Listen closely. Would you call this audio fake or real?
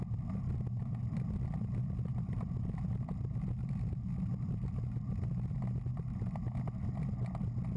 real